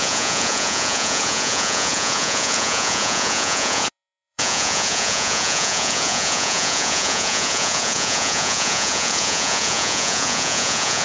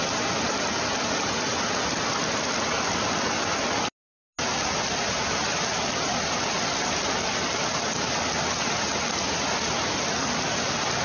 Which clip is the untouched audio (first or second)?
second